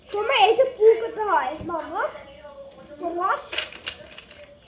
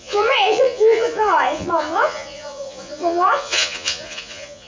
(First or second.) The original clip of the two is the first